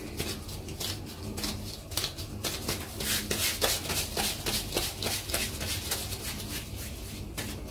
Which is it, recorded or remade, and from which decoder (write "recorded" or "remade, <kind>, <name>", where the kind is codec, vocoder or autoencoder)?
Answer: recorded